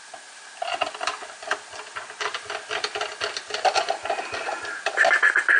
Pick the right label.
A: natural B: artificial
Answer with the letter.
A